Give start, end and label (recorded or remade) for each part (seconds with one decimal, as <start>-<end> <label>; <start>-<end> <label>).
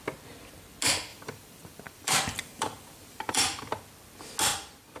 0.0-1.1 recorded; 1.1-3.8 remade; 3.8-4.5 recorded; 4.5-5.0 remade